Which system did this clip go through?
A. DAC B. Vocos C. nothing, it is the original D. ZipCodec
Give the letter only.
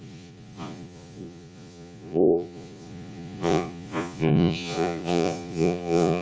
B